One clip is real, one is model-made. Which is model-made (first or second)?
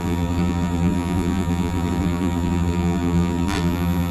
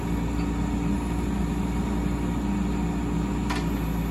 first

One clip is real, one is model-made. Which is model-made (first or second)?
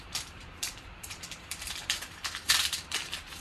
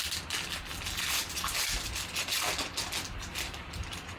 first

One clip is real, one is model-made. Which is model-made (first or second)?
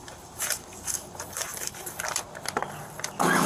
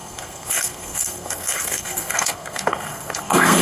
second